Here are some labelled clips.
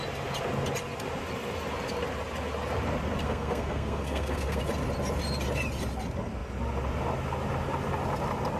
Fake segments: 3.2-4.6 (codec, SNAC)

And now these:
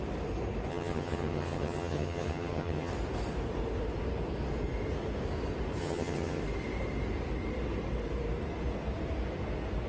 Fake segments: 0.7-2.9 (vocoder, HiFi-GAN); 5.8-6.4

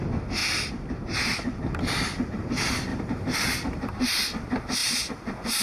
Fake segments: 2.9-4.2 (vocoder, BigVGAN v2); 4.8-5.6

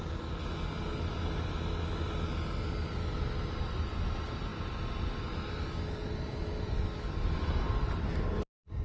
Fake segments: none

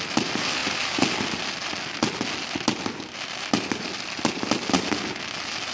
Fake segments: none

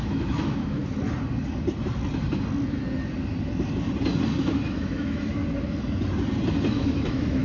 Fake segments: 0.0-0.8 (autoencoder, DAC-VAE); 4.4-5.4; 6.7-7.4

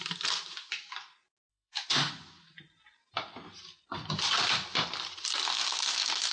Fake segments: 1.5-2.1 (autoencoder, DAC-VAE); 5.5-6.3